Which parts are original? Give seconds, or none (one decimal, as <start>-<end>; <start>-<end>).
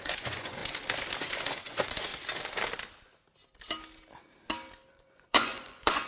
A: 0.6-1.2; 2.1-4.9